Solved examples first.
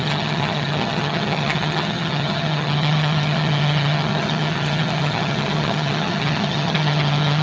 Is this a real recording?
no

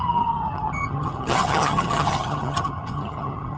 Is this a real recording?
no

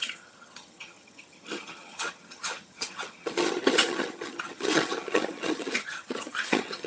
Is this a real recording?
no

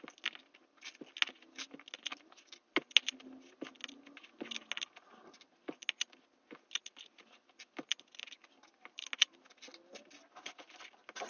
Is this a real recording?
yes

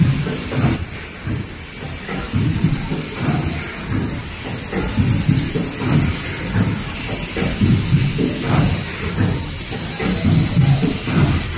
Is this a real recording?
yes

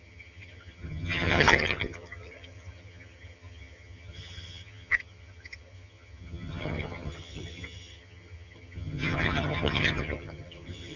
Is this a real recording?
no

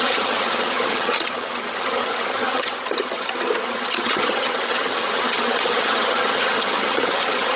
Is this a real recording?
no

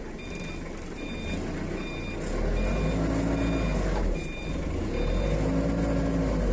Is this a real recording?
yes